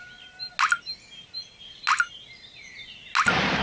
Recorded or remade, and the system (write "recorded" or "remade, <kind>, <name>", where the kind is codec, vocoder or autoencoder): recorded